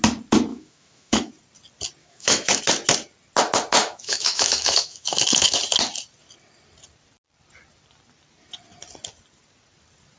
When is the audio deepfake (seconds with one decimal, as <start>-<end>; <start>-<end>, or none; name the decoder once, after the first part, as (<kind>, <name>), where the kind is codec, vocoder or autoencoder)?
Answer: 0.5-1.3 (autoencoder, DAC-VAE); 2.0-2.6; 3.8-5.6